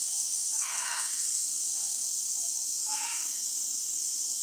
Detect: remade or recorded remade